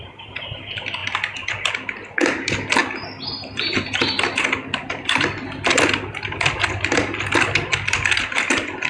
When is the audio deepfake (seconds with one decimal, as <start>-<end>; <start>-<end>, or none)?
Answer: 0.0-2.8; 4.9-8.9